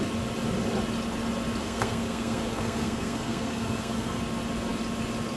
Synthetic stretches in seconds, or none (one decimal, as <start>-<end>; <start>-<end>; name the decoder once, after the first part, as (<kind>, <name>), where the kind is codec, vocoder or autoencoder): 1.6-4.2 (codec, SNAC)